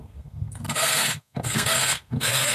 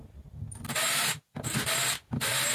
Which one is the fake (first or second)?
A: first